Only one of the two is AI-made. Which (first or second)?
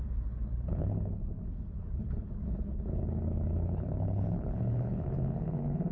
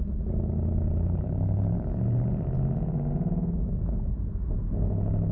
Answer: first